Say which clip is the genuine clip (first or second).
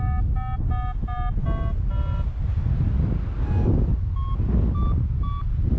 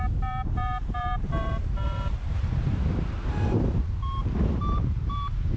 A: first